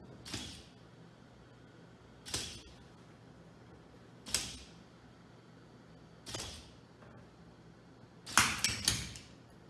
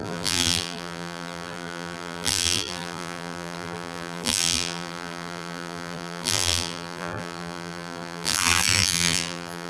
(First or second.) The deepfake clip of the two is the second